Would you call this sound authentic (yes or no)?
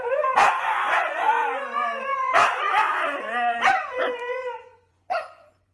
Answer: no